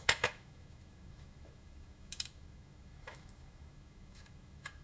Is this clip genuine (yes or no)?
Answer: no